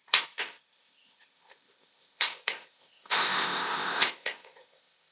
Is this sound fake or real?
fake